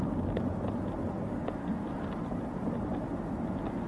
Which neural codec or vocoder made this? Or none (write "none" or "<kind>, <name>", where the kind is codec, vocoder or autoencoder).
none